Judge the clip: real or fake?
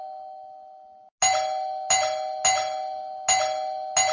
real